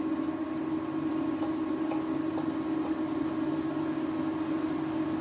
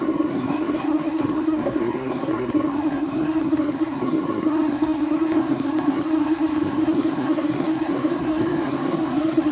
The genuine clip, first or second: first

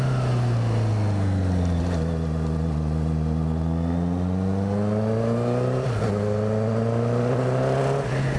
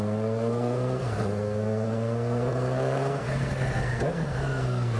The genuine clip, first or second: first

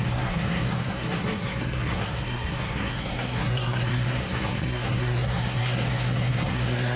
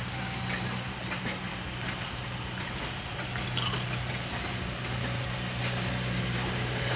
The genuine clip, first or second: second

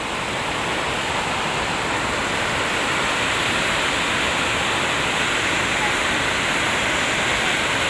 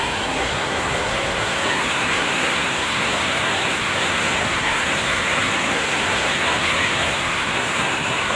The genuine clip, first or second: first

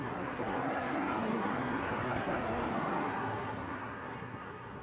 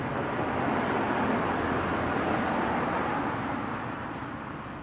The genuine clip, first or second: second